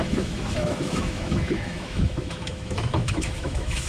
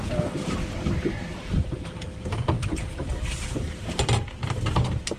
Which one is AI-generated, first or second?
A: first